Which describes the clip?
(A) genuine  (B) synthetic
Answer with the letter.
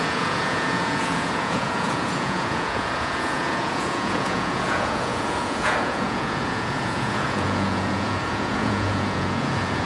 B